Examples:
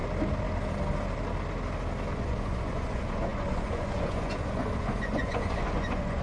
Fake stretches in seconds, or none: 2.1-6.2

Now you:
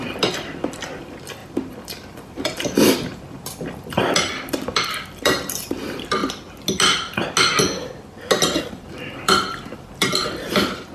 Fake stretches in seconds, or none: 0.0-6.2; 8.6-10.9

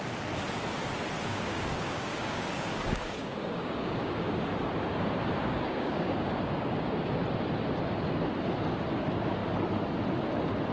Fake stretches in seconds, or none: 1.3-4.3; 5.4-7.2

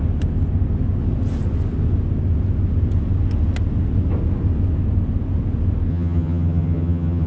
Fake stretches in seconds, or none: 5.9-7.3

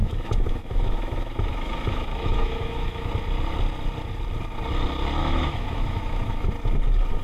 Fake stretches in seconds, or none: 0.0-3.1; 5.2-6.5